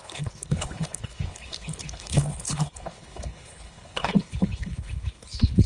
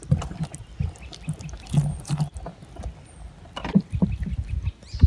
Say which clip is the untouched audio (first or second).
second